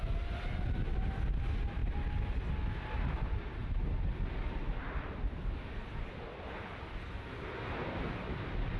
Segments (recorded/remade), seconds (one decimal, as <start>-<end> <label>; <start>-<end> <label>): 0.0-8.8 recorded

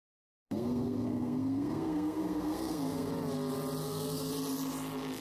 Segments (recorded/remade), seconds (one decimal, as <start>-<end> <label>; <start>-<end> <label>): 0.0-3.1 remade; 3.1-3.8 recorded; 3.8-4.3 remade; 4.3-5.2 recorded

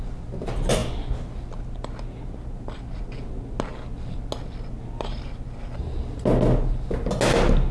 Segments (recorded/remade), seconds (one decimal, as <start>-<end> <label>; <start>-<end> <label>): 0.0-7.7 recorded

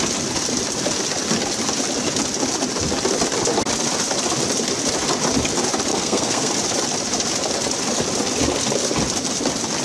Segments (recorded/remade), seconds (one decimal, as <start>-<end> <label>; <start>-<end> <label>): 0.0-5.9 recorded; 5.9-6.5 remade; 6.5-9.8 recorded